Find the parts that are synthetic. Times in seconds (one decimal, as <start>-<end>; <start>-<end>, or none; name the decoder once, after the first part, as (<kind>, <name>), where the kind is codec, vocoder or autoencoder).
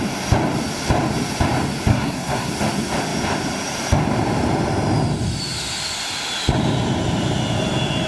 1.9-2.5 (codec, SNAC)